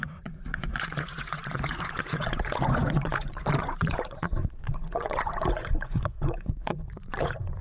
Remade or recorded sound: remade